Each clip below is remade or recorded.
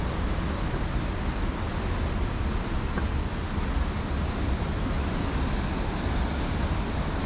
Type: recorded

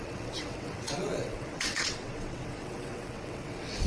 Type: remade